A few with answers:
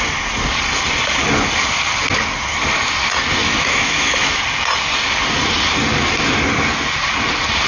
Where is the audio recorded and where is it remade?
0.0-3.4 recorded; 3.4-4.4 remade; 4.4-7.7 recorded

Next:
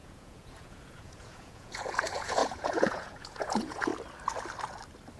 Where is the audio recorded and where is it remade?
0.0-3.9 remade; 3.9-5.2 recorded